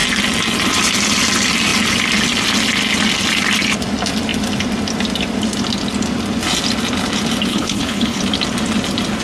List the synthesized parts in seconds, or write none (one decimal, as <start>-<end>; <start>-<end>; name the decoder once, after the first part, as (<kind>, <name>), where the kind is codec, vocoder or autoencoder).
7.5-8.2 (codec, HILCodec)